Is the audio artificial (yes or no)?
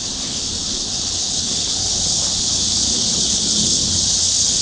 yes